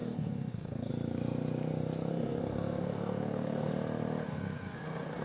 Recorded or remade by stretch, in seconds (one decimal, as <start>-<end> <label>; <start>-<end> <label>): 0.0-0.9 remade; 0.9-2.1 recorded; 2.1-3.7 remade; 3.7-4.3 recorded; 4.3-5.2 remade